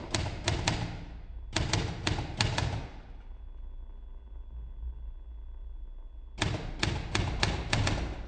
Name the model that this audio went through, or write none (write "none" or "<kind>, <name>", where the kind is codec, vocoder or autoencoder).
none